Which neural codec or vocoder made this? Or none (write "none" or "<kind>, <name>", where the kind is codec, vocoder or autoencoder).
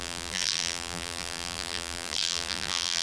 vocoder, BigVGAN v2